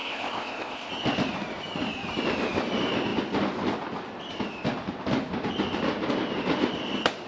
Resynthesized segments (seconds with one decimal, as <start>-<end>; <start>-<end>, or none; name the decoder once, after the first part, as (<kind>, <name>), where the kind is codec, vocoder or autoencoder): 0.0-0.9 (codec, ZipCodec)